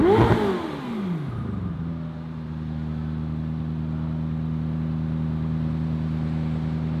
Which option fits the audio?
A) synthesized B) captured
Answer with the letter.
B